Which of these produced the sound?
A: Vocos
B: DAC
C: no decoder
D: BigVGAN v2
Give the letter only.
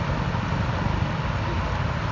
C